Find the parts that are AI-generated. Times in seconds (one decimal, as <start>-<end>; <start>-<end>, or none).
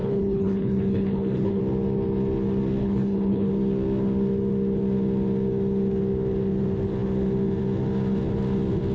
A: 0.0-1.6; 2.8-3.5